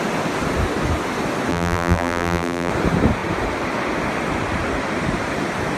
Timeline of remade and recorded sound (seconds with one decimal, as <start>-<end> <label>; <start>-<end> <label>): 0.0-1.5 recorded; 1.5-2.7 remade; 2.7-5.8 recorded